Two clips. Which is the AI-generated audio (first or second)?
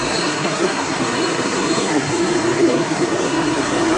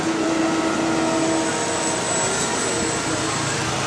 first